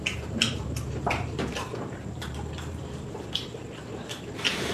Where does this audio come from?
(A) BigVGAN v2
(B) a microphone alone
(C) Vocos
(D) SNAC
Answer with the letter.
A